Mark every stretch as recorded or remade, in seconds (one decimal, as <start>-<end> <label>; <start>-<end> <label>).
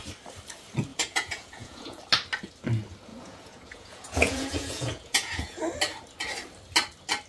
0.0-0.9 recorded; 0.9-2.0 remade; 2.0-3.1 recorded; 3.1-5.6 remade; 5.6-7.3 recorded